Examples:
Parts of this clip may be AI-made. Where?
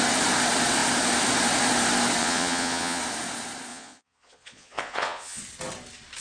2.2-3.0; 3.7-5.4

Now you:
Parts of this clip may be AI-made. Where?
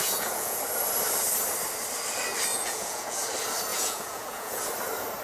0.0-0.6; 2.5-3.3; 3.7-4.7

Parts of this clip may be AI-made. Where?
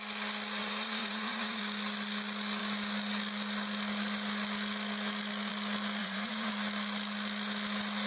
0.6-1.6; 6.0-6.5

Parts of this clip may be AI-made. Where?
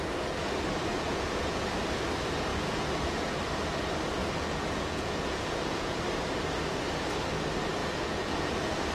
0.9-1.6; 2.5-3.4; 4.2-6.0; 7.8-8.9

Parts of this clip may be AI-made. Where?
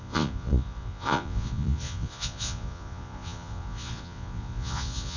0.0-5.2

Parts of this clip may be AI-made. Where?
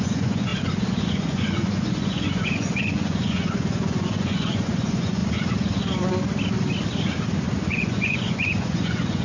0.0-0.5; 1.1-5.2; 7.7-9.2